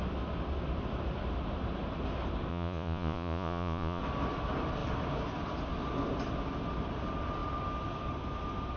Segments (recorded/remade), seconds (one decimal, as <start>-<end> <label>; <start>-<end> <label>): 0.0-2.5 recorded; 2.5-4.0 remade; 4.0-8.8 recorded